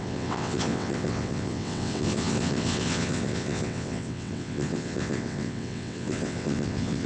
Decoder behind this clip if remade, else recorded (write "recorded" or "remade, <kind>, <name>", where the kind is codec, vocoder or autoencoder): remade, vocoder, WaveNeXt